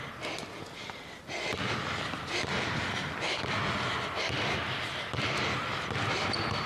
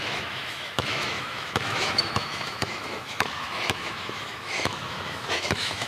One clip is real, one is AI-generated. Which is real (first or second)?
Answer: first